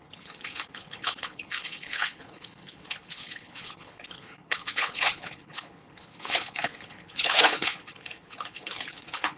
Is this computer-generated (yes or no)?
yes